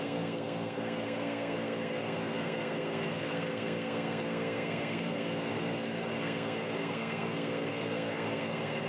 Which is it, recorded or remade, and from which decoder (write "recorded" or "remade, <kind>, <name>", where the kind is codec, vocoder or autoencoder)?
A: remade, codec, SNAC